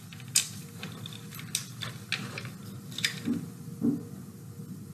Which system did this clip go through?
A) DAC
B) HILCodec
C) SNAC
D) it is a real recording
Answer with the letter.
D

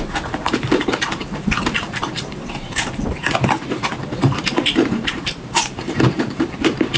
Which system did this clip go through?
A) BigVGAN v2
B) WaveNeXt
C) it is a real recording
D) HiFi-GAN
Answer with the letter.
A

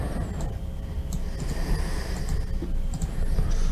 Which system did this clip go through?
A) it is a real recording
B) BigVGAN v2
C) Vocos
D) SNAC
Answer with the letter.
A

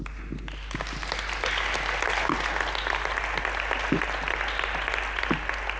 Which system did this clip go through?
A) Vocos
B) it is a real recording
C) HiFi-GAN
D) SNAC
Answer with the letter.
B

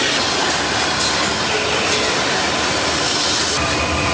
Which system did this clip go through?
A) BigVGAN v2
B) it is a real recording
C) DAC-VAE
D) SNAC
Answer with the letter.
B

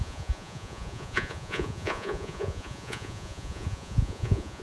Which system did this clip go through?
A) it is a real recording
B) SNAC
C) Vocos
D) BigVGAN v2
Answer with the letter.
C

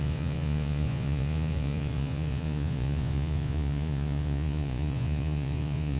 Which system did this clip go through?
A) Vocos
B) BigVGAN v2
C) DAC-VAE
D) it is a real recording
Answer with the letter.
A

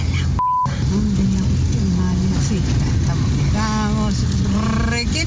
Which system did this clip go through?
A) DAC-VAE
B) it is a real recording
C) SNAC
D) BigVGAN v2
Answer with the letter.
B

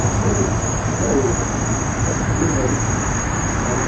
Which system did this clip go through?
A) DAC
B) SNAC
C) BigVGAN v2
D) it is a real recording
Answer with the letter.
D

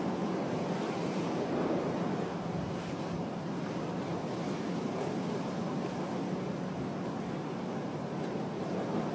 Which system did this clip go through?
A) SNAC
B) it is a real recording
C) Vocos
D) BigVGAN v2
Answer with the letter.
B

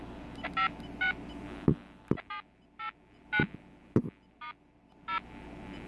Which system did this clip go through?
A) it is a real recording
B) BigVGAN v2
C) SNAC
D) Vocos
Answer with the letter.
B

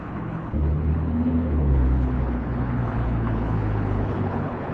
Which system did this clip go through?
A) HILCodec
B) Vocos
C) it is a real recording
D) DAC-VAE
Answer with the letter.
A